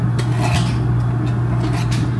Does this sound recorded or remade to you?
recorded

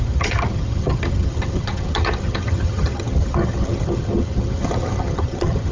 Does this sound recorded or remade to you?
remade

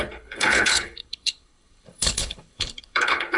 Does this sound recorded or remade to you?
remade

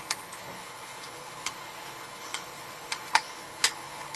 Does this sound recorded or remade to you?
remade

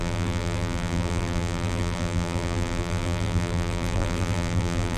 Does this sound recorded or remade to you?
remade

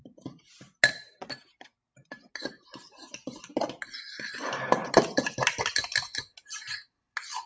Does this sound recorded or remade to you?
recorded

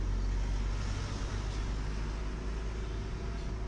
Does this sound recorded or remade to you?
recorded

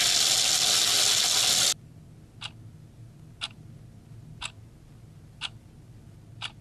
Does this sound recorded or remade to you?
recorded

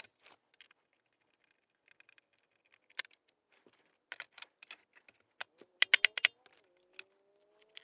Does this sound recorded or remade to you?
recorded